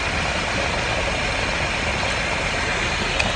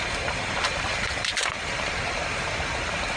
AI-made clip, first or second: second